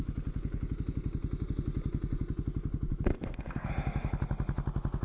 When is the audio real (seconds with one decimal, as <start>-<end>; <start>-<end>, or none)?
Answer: 0.0-3.1; 3.7-5.0